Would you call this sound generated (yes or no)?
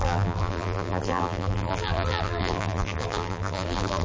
yes